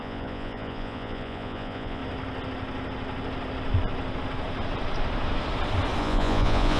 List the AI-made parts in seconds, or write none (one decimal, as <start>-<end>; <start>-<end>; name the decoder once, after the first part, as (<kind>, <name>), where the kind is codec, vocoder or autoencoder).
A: 0.0-2.0 (vocoder, Vocos); 6.0-6.8